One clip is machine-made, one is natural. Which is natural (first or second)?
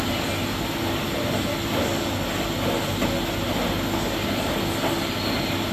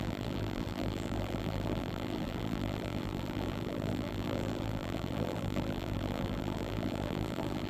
first